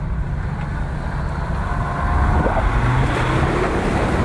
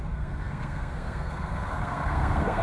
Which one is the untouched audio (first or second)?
first